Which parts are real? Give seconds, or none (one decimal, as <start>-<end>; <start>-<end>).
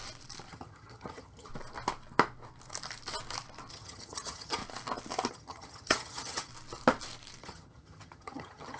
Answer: 0.0-0.5; 1.5-3.7; 4.6-5.3; 6.5-7.4